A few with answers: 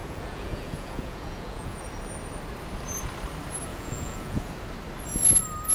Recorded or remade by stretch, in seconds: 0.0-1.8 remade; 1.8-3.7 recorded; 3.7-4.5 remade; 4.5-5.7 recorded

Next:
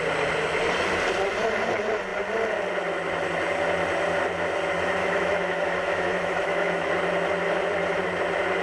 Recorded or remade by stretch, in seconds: 0.0-5.0 recorded; 5.0-6.9 remade; 6.9-8.6 recorded

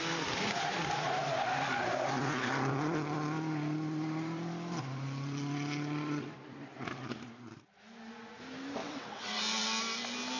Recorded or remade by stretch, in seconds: 0.0-8.8 recorded; 8.8-9.4 remade; 9.4-10.4 recorded

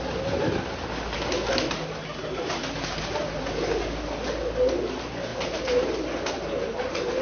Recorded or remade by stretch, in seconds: 0.0-5.3 recorded; 5.3-5.9 remade; 5.9-7.2 recorded

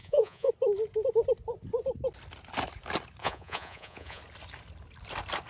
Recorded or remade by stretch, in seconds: 0.0-0.5 remade; 0.5-3.2 recorded; 3.2-4.2 remade; 4.2-5.5 recorded

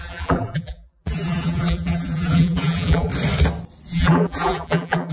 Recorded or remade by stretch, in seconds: 0.0-3.1 remade; 3.1-3.9 recorded; 3.9-5.1 remade

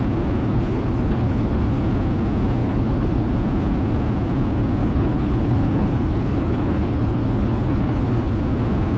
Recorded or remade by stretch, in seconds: 0.0-0.4 recorded; 0.4-1.8 remade; 1.8-2.6 recorded; 2.6-3.3 remade; 3.3-4.8 recorded; 4.8-8.4 remade; 8.4-9.0 recorded

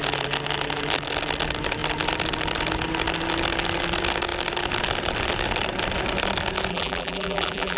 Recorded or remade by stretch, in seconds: 0.0-6.7 recorded; 6.7-7.8 remade